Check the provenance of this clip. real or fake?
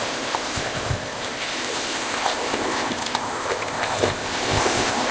fake